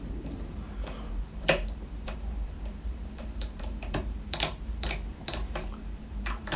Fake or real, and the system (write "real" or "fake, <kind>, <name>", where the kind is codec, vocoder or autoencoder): fake, vocoder, BigVGAN v2